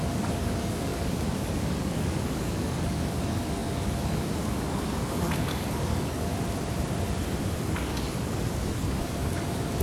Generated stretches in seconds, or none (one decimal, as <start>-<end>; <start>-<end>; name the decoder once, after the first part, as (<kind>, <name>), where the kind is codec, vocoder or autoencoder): 0.0-6.3 (codec, DAC); 7.5-9.8